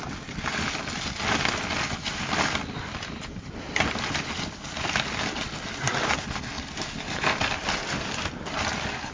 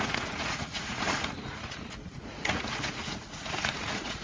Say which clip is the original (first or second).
first